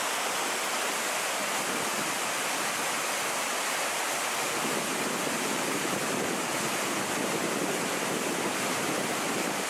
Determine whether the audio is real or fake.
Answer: real